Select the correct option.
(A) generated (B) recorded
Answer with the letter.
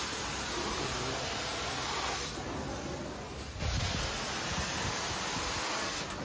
B